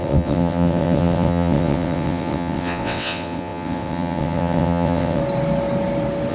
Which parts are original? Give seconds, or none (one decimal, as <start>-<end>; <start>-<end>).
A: 5.2-6.3